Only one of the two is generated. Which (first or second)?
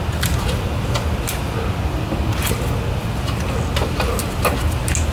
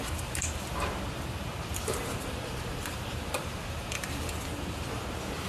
second